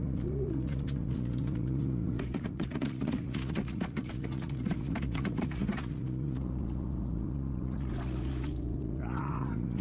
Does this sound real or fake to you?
fake